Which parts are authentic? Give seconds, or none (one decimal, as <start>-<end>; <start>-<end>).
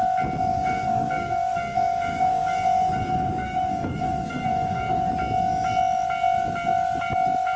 0.0-0.5; 5.1-7.6